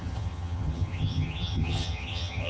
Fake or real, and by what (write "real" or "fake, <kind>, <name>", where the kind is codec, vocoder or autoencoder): fake, vocoder, HiFi-GAN